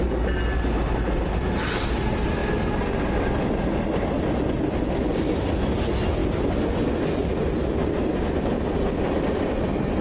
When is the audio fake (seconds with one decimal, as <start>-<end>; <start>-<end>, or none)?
none